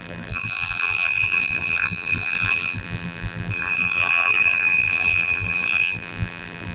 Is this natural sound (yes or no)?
no